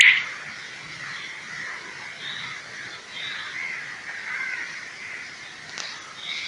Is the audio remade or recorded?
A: recorded